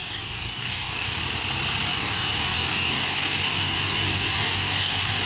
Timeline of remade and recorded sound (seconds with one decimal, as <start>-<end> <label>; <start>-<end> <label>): 0.0-1.2 remade; 1.2-1.9 recorded; 1.9-5.3 remade